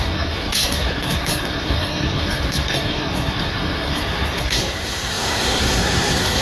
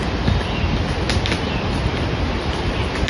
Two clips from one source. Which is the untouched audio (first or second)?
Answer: second